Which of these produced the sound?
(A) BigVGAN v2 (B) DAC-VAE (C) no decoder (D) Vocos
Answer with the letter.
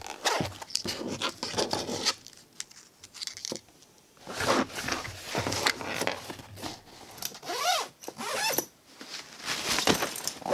C